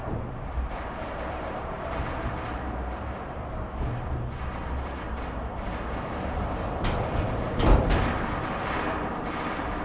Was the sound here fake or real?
fake